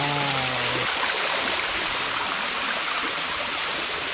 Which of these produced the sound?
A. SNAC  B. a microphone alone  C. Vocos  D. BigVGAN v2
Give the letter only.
B